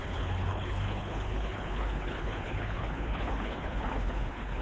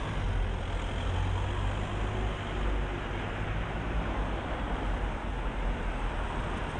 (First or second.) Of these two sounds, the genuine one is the second